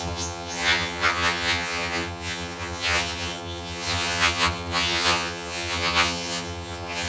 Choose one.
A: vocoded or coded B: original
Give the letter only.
A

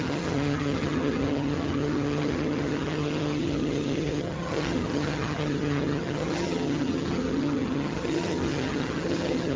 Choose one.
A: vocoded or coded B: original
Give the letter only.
A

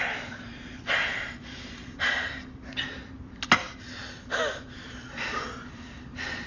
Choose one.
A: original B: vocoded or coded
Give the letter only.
A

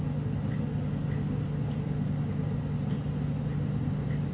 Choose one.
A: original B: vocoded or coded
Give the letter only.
A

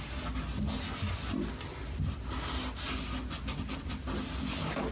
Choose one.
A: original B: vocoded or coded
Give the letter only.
A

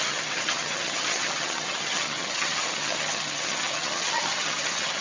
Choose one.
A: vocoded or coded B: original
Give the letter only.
A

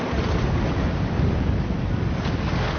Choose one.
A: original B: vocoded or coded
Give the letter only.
A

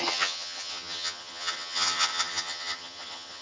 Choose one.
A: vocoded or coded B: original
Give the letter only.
A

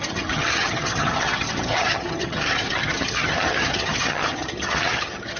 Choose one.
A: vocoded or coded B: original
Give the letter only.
A